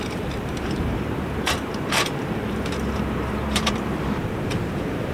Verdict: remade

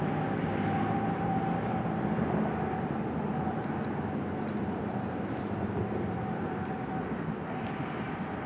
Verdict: recorded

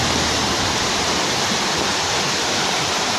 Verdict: remade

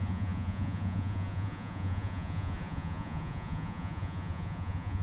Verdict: remade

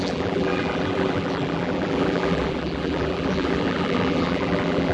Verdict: remade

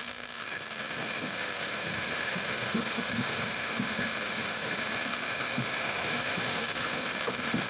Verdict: remade